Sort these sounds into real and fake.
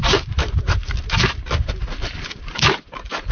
fake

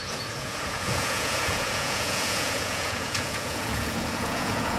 fake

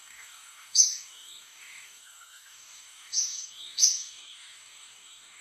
fake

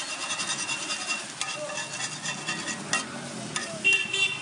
real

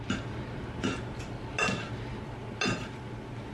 real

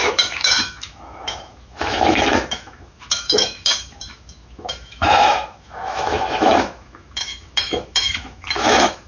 fake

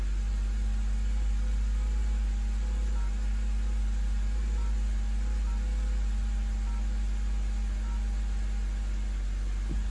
real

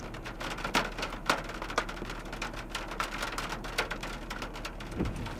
real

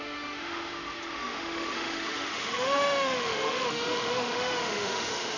fake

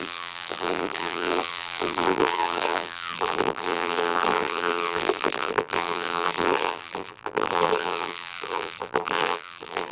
fake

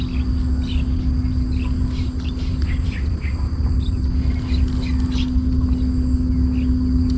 real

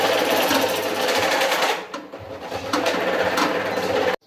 real